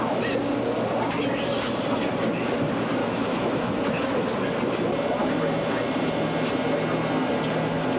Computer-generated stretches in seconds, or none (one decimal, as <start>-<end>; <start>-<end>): 3.0-3.7